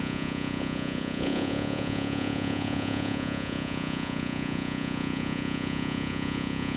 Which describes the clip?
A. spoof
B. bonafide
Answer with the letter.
A